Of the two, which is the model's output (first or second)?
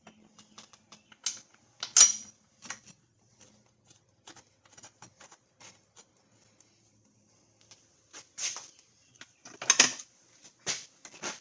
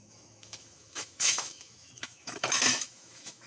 second